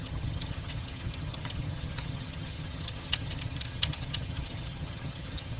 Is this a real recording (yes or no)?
no